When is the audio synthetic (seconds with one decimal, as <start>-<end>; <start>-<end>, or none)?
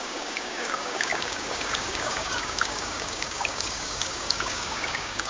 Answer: 0.0-5.3